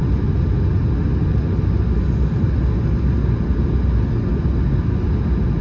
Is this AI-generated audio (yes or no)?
no